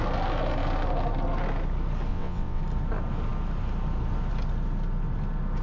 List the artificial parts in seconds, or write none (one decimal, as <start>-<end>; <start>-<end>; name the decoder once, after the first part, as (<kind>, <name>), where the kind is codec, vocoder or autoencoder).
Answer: 2.1-2.6 (vocoder, WaveNeXt)